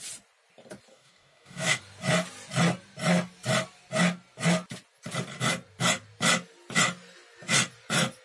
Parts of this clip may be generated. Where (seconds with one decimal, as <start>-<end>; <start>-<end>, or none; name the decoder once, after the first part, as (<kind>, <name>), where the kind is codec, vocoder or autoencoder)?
0.9-1.8 (codec, DAC)